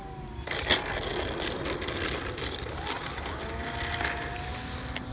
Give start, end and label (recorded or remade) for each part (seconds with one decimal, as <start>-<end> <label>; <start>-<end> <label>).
0.0-5.1 recorded